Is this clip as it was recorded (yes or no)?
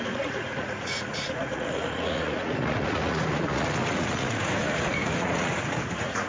no